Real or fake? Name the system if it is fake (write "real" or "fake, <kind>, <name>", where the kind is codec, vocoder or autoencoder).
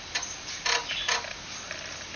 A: real